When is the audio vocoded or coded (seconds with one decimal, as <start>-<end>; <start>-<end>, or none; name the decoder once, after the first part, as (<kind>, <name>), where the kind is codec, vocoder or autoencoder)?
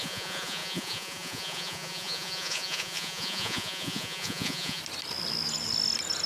0.0-4.8 (vocoder, Vocos)